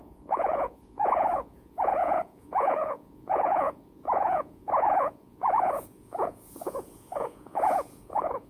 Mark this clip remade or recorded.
remade